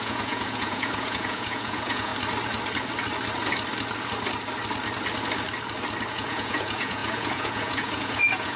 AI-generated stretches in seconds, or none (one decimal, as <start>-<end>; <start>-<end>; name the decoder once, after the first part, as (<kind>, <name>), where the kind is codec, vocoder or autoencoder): 0.0-2.1 (vocoder, Vocos); 6.1-8.6